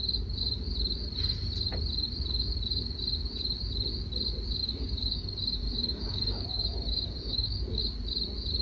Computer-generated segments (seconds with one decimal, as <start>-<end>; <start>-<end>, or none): 4.6-7.8